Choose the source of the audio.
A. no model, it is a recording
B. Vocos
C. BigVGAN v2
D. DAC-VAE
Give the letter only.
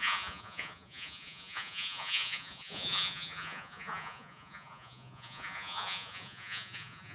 B